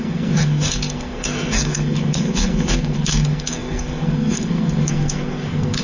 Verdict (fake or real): fake